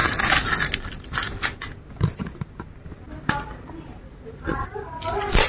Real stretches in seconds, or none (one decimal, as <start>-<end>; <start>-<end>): 0.0-5.5